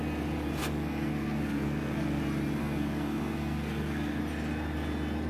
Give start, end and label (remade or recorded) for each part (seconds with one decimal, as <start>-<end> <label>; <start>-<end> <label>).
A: 0.0-0.6 recorded; 0.6-2.2 remade; 2.2-2.6 recorded; 2.6-4.2 remade; 4.2-5.3 recorded